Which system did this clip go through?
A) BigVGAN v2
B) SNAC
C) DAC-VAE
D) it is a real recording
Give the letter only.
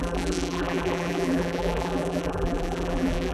A